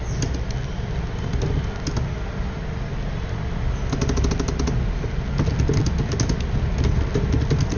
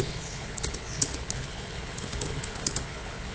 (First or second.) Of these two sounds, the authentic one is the first